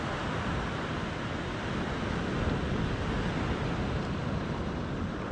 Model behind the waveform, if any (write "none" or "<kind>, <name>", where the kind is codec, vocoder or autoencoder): none